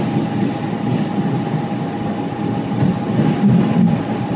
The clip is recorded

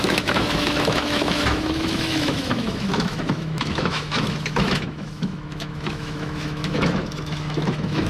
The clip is remade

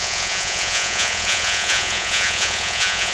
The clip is remade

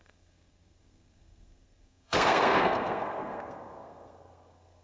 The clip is remade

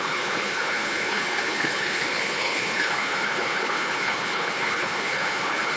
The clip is remade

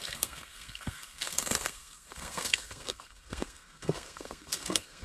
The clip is remade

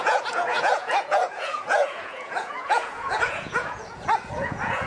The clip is remade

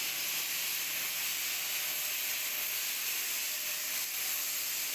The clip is recorded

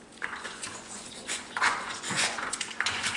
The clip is remade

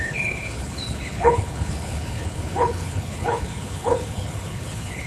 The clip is remade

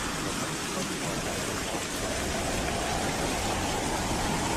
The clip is recorded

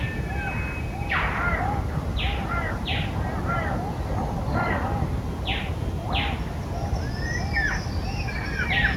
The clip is recorded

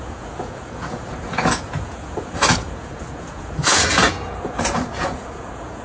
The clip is remade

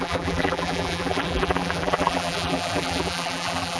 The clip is remade